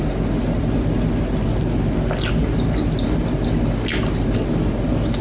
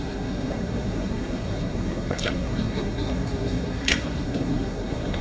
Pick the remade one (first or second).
second